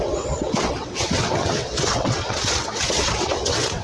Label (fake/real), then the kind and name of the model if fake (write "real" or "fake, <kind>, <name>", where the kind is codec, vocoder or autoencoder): fake, vocoder, WaveNeXt